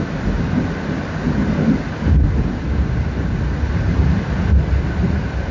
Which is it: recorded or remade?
recorded